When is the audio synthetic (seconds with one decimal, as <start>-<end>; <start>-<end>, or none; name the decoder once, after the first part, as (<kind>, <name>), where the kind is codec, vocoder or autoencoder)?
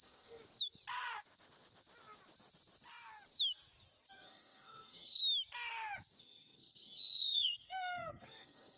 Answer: 0.0-0.4 (codec, SNAC); 4.1-5.2; 6.2-8.8